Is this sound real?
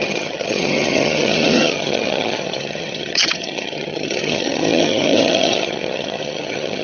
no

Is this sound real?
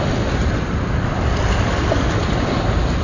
yes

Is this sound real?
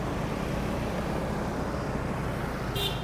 yes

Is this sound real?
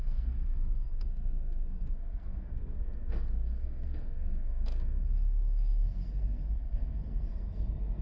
no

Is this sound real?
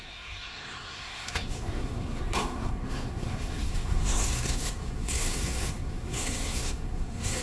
no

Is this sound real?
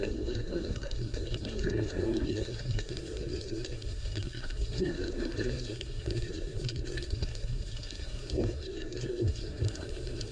no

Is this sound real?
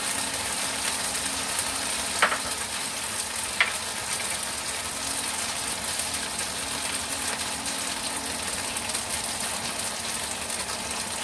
yes